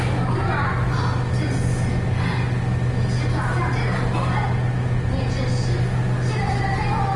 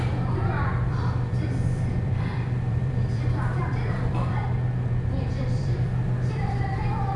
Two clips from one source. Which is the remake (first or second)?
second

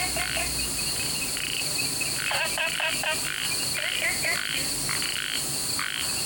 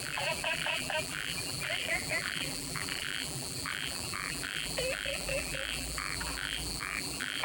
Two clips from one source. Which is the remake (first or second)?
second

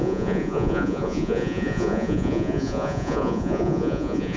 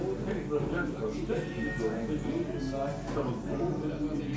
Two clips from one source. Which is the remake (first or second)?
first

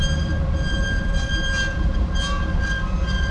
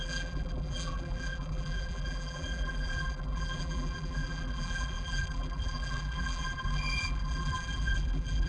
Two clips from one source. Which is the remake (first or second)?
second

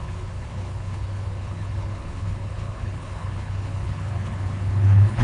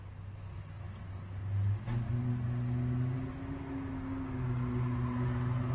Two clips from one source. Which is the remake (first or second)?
first